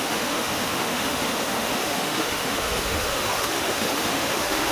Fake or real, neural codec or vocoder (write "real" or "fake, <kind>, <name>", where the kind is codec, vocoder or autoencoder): fake, autoencoder, DAC-VAE